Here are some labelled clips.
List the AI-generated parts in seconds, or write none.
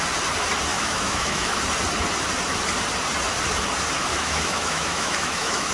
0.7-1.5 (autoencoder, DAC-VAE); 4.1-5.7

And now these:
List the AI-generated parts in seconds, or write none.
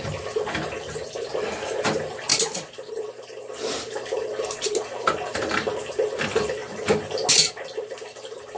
none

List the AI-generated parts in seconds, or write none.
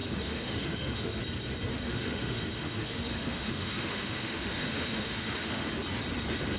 0.0-1.2 (autoencoder, DAC-VAE); 1.7-5.7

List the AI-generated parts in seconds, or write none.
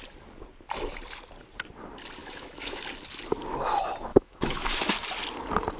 2.2-2.8 (autoencoder, DAC-VAE); 4.1-4.9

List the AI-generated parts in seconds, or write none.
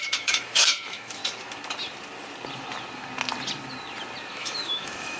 0.0-1.2 (autoencoder, DAC-VAE); 4.3-5.2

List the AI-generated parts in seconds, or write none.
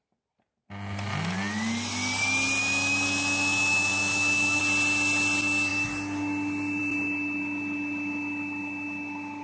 2.6-4.6 (autoencoder, DAC-VAE)